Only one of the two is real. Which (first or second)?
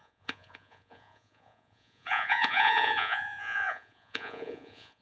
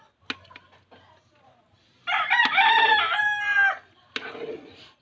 second